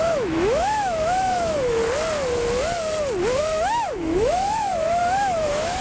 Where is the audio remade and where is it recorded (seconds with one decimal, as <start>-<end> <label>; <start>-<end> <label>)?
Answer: 0.0-1.8 remade; 1.8-3.4 recorded; 3.4-5.8 remade